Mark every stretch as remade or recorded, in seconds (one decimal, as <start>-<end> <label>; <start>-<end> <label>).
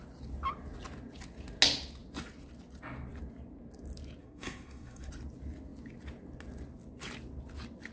0.0-4.2 recorded; 4.2-5.1 remade; 5.1-7.9 recorded